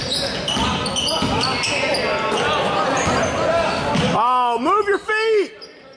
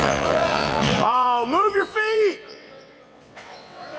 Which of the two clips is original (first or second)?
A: first